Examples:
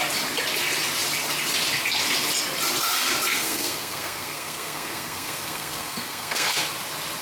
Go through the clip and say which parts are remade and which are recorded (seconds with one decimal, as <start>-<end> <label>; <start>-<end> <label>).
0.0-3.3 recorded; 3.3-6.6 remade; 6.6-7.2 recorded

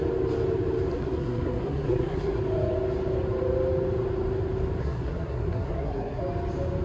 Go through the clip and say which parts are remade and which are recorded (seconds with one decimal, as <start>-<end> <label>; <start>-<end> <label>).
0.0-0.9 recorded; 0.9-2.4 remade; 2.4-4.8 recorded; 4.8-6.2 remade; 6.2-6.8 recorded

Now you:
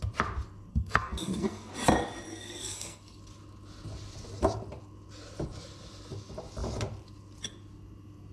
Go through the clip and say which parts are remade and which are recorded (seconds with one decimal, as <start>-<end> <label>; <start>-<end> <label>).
0.0-0.7 recorded; 0.7-1.7 remade; 1.7-2.3 recorded; 2.3-3.2 remade; 3.2-8.3 recorded

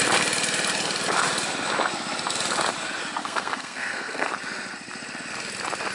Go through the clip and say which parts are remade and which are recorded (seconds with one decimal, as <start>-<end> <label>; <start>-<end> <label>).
0.0-3.2 recorded; 3.2-4.3 remade; 4.3-5.9 recorded

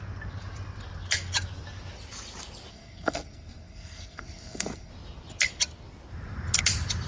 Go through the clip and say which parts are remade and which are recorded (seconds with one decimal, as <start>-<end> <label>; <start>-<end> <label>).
0.0-2.7 recorded; 2.7-4.9 remade; 4.9-7.1 recorded

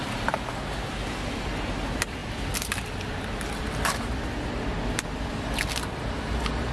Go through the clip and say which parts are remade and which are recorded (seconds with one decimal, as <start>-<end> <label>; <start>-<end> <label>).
0.0-6.7 recorded